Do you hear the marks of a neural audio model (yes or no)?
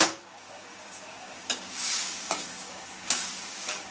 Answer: yes